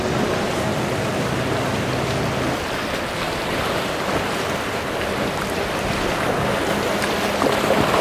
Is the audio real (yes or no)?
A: yes